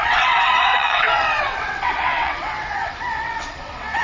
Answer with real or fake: fake